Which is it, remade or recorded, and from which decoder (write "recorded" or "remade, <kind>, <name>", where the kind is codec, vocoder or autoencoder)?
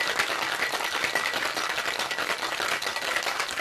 recorded